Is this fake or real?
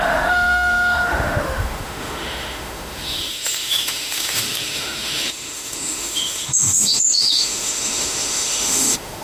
fake